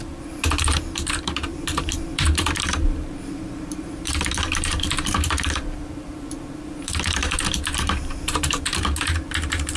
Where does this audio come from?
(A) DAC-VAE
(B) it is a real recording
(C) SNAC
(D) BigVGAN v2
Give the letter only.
D